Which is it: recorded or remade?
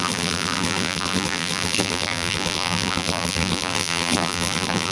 remade